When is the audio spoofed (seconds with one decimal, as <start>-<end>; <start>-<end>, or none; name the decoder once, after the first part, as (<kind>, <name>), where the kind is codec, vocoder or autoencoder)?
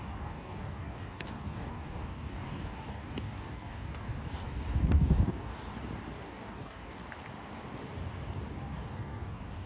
0.0-5.5 (codec, DAC); 6.2-7.0; 8.5-9.7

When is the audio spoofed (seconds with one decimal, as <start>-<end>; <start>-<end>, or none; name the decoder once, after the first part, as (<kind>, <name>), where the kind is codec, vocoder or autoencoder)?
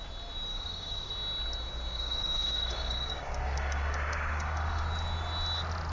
0.5-1.1 (codec, DAC); 1.9-4.8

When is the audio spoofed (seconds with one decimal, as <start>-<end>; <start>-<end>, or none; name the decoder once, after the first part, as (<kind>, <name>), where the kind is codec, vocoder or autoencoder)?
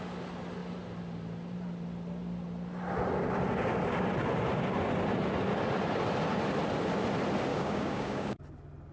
7.5-8.4 (codec, DAC)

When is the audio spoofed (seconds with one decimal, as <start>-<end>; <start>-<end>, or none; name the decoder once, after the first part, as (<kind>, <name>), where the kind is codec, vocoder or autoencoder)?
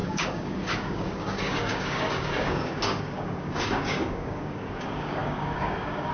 0.0-6.1 (codec, DAC)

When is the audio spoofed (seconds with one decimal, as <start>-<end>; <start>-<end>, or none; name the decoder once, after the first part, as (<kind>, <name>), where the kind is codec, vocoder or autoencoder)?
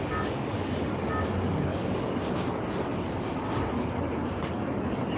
0.0-0.7 (codec, DAC); 1.7-2.3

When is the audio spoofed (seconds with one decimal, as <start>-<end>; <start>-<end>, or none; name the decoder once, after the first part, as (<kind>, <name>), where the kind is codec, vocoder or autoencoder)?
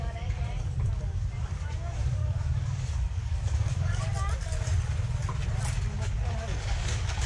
0.0-4.1 (codec, DAC); 6.6-7.3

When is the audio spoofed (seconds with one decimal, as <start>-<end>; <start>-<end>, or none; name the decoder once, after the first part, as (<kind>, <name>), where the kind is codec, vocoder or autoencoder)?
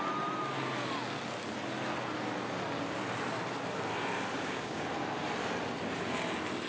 4.3-4.9 (codec, DAC)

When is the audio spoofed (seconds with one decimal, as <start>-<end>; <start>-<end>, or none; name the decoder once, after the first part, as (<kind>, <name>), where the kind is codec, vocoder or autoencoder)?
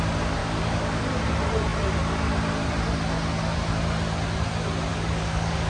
0.4-1.0 (codec, DAC); 4.9-5.7